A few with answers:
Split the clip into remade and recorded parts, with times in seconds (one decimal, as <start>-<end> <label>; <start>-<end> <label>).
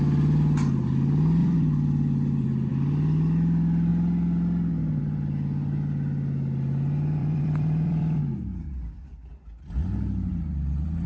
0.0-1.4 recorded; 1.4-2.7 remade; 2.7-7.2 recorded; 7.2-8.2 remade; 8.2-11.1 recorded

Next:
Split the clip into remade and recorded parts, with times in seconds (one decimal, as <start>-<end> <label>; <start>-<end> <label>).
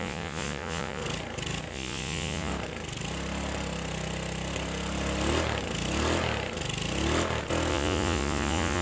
0.0-1.0 remade; 1.0-1.7 recorded; 1.7-2.5 remade; 2.5-7.7 recorded; 7.7-8.8 remade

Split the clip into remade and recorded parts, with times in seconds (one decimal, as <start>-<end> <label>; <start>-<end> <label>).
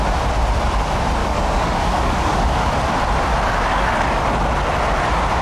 0.0-1.2 recorded; 1.2-2.7 remade; 2.7-3.7 recorded; 3.7-4.3 remade; 4.3-5.4 recorded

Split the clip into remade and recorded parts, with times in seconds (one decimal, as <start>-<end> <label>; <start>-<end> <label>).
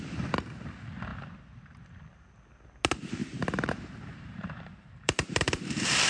0.0-3.2 recorded; 3.2-6.1 remade